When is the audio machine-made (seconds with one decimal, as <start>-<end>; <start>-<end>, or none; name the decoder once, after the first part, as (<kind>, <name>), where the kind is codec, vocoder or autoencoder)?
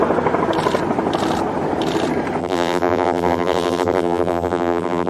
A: 2.4-5.1 (vocoder, BigVGAN v2)